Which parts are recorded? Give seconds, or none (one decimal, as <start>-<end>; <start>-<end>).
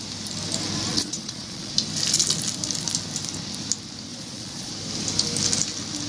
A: 0.0-0.9; 1.7-4.1; 4.7-6.1